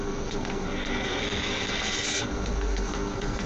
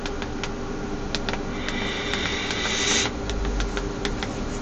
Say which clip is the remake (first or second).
first